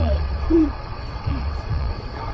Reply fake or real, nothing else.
fake